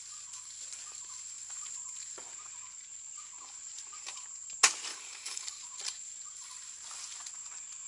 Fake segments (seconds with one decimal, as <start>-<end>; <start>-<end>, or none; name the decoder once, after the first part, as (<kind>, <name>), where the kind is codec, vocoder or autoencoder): 4.9-5.6 (codec, DAC)

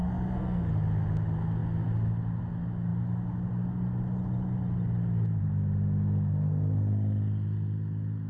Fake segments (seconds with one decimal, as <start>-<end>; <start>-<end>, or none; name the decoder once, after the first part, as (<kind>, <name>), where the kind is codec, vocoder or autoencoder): 0.0-0.7 (codec, SNAC)

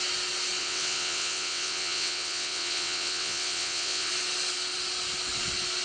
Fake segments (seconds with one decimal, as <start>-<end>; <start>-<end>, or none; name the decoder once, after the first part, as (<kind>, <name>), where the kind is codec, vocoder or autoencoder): 0.6-4.1 (vocoder, WaveNeXt)